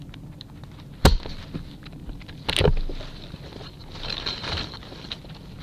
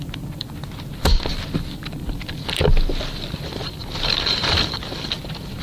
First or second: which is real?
first